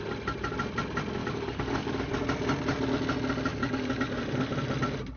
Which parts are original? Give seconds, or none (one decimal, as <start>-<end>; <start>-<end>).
0.0-1.2; 2.1-3.5; 4.2-5.2